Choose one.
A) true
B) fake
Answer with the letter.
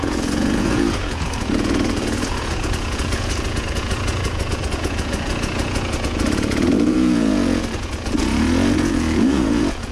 B